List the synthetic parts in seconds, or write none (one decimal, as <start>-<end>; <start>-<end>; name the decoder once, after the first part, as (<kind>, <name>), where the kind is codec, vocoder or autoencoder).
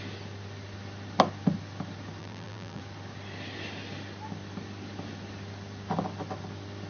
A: 2.2-2.8 (vocoder, BigVGAN v2)